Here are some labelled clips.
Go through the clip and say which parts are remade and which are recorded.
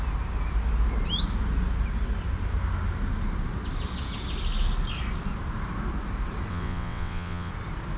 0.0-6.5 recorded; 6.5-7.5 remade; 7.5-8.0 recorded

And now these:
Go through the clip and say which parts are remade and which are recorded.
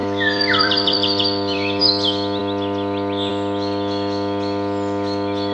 0.0-1.8 remade; 1.8-5.5 recorded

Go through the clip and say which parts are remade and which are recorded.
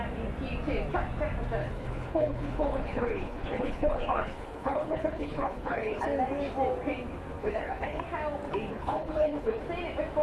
0.0-1.6 recorded; 1.6-6.0 remade; 6.0-7.4 recorded; 7.4-8.0 remade; 8.0-8.7 recorded; 8.7-9.6 remade; 9.6-10.2 recorded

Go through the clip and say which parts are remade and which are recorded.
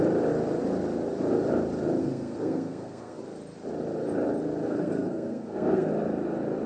0.0-2.0 recorded; 2.0-3.2 remade; 3.2-4.6 recorded; 4.6-5.9 remade; 5.9-6.7 recorded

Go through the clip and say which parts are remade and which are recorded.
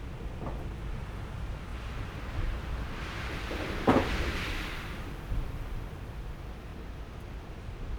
0.0-6.7 remade; 6.7-7.4 recorded; 7.4-8.0 remade